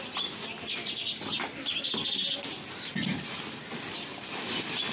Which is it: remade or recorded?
recorded